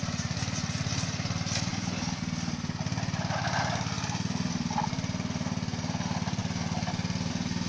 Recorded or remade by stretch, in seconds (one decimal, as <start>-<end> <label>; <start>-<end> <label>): 0.0-7.7 recorded